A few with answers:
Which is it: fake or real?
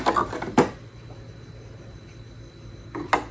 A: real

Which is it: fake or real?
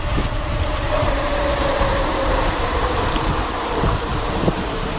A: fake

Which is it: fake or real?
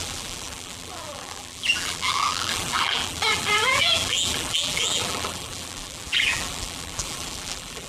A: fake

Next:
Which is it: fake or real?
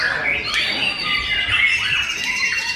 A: real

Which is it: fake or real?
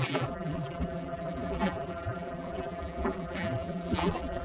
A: fake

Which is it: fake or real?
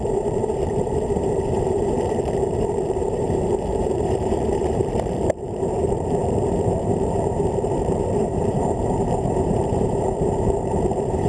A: fake